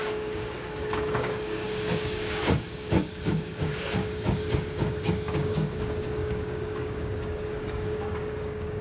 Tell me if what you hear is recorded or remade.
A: remade